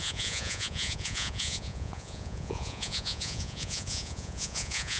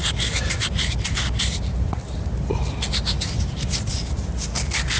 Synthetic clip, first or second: first